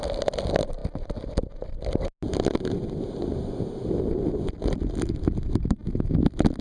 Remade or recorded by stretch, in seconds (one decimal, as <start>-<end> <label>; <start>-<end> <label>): 0.0-6.6 recorded